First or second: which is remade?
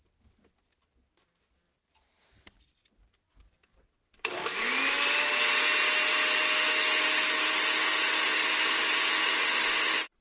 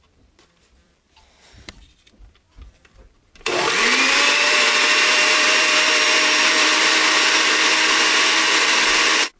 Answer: second